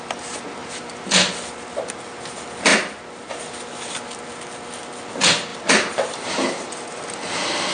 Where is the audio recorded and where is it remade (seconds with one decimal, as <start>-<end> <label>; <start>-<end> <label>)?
0.0-0.6 recorded; 0.6-1.3 remade; 1.3-5.5 recorded; 5.5-6.7 remade; 6.7-7.7 recorded